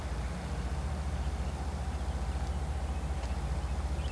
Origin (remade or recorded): recorded